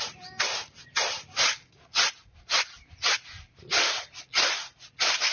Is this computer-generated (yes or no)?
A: no